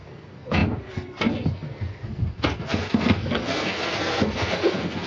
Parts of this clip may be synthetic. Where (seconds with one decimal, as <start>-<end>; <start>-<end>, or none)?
0.0-5.1